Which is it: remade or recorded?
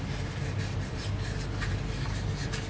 recorded